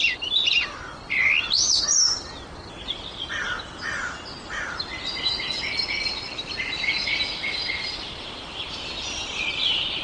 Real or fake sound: fake